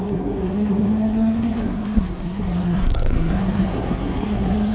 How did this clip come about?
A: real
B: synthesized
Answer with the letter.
B